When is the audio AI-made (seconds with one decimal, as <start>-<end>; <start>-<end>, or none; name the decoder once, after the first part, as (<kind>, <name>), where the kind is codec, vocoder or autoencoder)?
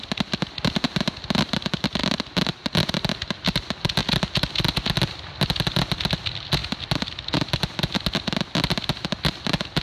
none